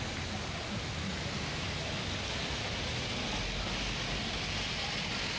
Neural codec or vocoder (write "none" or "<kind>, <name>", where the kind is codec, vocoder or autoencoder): none